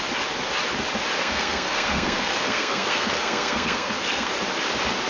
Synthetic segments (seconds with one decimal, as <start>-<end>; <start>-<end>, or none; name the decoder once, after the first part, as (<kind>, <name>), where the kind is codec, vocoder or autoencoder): 1.2-4.3 (codec, SNAC)